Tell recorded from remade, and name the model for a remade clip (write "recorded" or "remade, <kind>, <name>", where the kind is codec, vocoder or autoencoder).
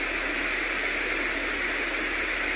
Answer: recorded